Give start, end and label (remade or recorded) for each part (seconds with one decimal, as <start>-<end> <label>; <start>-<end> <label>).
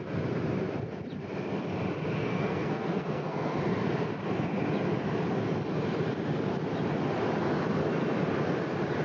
0.0-2.2 recorded; 2.2-3.6 remade; 3.6-9.0 recorded